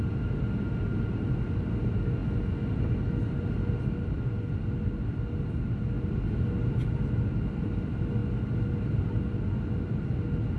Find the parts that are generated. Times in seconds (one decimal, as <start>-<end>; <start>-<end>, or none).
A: none